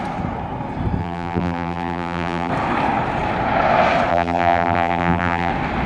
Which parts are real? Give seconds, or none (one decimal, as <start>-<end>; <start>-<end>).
0.0-1.0; 2.5-4.1; 5.5-5.9